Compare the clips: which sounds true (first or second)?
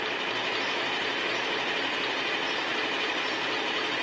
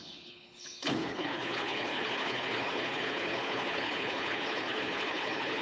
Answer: first